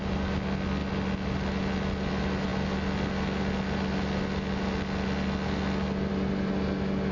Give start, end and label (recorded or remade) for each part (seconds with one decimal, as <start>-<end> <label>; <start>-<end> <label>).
0.0-7.1 recorded